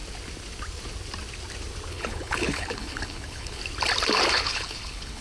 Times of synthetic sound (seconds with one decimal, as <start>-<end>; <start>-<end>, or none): 1.9-3.6; 4.3-5.2